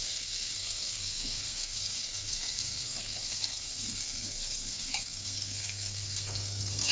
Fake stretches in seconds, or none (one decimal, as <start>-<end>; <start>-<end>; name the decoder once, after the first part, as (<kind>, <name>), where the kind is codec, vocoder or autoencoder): 0.0-6.9 (codec, SNAC)